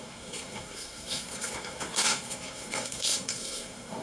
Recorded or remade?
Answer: remade